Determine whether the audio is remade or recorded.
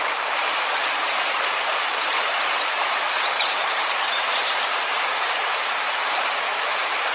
remade